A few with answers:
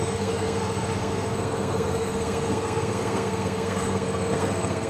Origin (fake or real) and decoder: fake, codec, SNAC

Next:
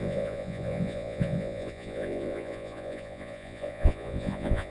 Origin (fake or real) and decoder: fake, vocoder, Vocos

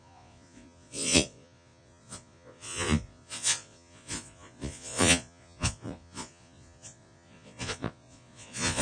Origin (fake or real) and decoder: fake, vocoder, Vocos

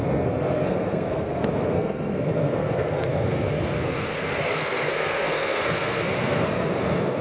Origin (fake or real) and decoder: fake, codec, SNAC